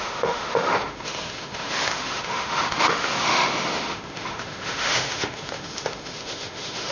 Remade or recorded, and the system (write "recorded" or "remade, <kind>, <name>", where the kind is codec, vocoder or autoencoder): remade, autoencoder, DAC-VAE